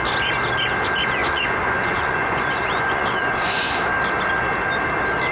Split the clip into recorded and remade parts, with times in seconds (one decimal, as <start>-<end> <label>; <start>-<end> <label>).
0.0-1.2 recorded; 1.2-3.8 remade; 3.8-5.3 recorded